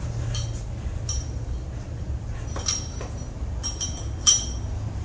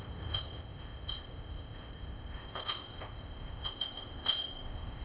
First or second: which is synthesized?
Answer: second